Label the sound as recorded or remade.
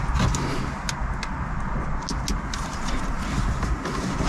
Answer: recorded